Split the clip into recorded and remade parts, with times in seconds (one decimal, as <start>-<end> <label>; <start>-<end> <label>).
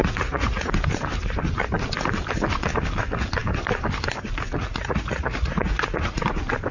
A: 0.0-0.7 remade; 0.7-4.7 recorded; 4.7-6.2 remade; 6.2-6.7 recorded